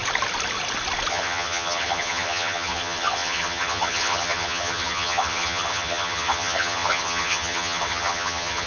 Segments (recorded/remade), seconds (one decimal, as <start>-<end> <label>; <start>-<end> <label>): 0.0-1.1 recorded; 1.1-8.7 remade